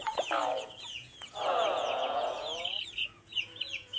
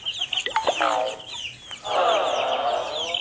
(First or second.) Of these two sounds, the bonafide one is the second